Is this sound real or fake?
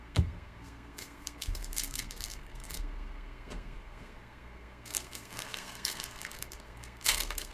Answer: fake